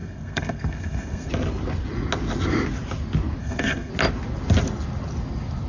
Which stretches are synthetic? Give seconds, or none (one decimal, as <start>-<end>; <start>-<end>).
0.0-1.3; 3.4-3.9